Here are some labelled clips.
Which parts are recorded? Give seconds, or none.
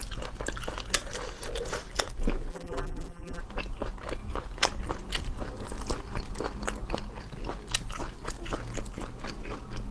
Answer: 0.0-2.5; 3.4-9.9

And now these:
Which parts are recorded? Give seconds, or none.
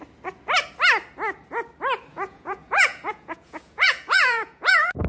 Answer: 0.0-2.1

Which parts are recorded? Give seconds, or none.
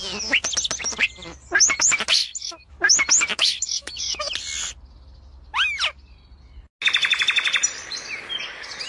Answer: 0.0-2.2; 2.7-3.3; 4.2-8.9